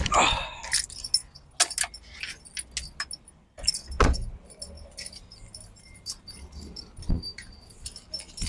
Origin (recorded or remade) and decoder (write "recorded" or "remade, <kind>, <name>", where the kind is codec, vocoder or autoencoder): recorded